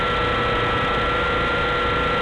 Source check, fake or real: real